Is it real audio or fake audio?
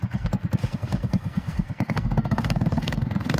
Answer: fake